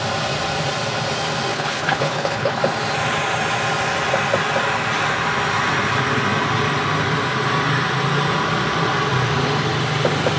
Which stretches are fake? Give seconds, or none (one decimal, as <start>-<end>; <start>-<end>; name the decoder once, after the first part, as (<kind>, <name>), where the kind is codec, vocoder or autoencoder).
1.5-2.6 (codec, HILCodec)